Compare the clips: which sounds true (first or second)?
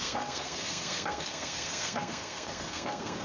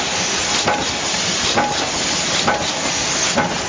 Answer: second